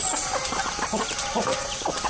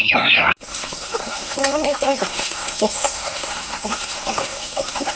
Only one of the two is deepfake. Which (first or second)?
second